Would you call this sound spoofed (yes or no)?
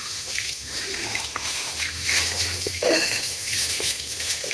yes